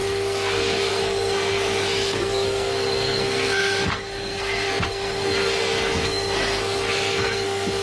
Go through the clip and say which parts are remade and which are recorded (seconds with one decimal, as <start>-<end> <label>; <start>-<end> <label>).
0.0-7.8 remade